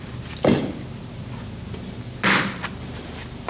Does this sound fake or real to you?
real